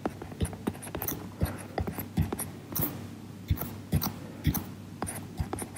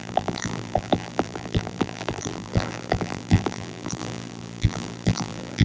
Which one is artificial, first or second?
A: second